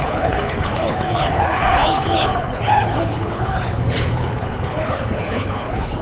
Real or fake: fake